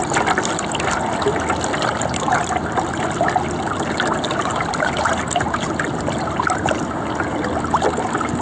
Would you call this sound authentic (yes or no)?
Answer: yes